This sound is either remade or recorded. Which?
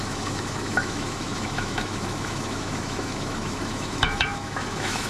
remade